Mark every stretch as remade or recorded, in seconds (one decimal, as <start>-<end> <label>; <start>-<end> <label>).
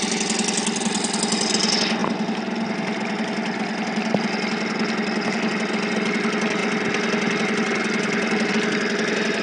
0.0-9.4 recorded